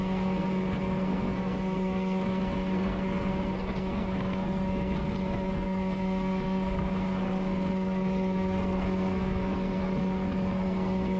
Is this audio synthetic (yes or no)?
yes